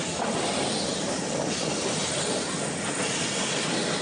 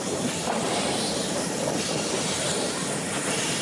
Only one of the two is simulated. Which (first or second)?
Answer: second